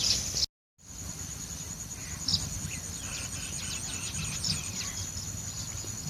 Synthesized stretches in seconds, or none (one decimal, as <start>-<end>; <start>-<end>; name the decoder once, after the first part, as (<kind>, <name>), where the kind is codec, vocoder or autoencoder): none